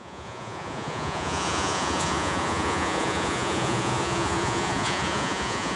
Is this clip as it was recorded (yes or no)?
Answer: no